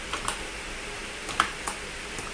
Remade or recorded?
recorded